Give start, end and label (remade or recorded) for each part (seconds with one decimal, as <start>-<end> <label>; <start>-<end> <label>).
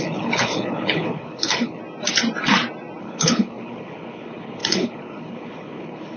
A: 0.0-1.8 remade; 1.8-3.0 recorded; 3.0-6.2 remade